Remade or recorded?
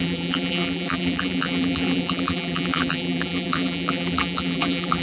remade